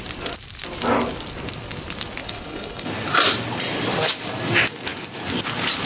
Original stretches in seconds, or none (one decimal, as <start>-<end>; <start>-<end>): 0.0-2.2; 2.9-5.9